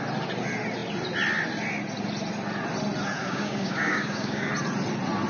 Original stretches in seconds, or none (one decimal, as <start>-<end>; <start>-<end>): 0.0-3.2; 4.5-5.3